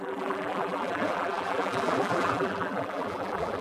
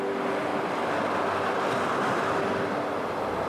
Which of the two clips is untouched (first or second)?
second